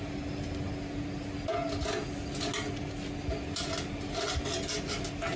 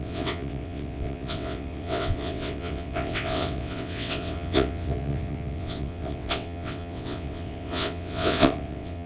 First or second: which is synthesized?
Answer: second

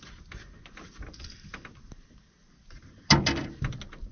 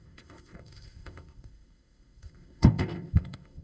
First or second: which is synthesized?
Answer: second